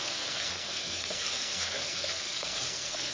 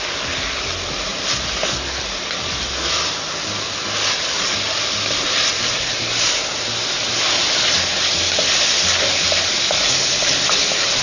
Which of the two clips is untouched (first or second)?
second